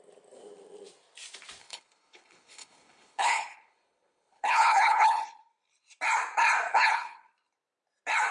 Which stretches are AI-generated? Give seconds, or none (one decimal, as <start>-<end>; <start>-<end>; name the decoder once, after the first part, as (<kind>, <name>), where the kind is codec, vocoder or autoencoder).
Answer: 1.6-5.4 (codec, HILCodec); 6.7-7.3